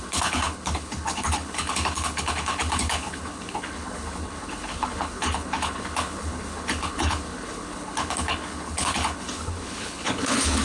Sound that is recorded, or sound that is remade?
remade